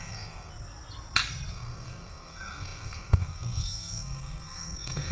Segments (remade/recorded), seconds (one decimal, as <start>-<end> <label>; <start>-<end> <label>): 0.0-0.5 remade; 0.5-1.5 recorded; 1.5-5.1 remade

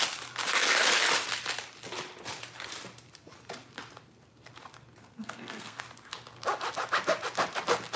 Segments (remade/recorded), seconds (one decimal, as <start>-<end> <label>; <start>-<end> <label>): 0.0-5.0 recorded; 5.0-5.8 remade; 5.8-8.0 recorded

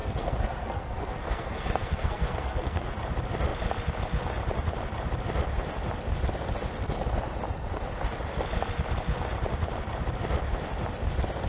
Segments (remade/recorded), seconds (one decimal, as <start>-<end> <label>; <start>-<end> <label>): 0.0-2.9 remade; 2.9-11.5 recorded

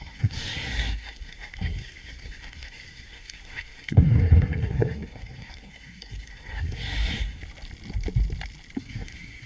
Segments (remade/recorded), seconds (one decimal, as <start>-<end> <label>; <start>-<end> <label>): 0.0-7.4 remade; 7.4-8.8 recorded; 8.8-9.5 remade